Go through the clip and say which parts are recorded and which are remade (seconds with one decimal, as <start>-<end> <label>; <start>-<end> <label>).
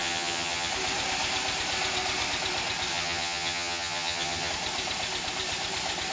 0.0-0.7 remade; 0.7-2.9 recorded; 2.9-4.5 remade; 4.5-6.1 recorded